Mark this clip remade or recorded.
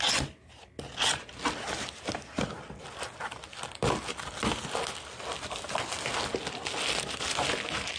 recorded